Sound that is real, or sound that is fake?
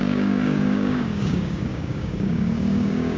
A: fake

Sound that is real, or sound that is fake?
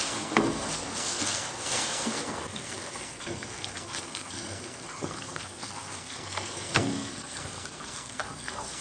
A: fake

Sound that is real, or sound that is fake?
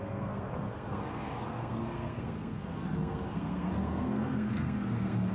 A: fake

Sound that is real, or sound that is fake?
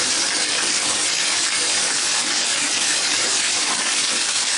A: fake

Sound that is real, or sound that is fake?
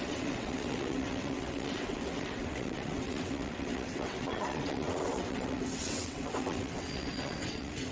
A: fake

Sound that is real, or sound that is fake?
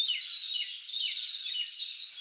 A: real